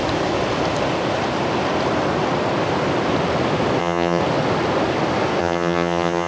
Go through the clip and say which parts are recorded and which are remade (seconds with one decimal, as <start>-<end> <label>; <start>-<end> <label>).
0.0-3.8 recorded; 3.8-4.2 remade; 4.2-5.4 recorded; 5.4-6.3 remade